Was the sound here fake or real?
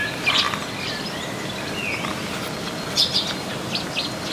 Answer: real